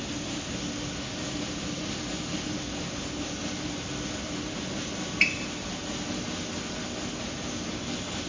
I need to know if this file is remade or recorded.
recorded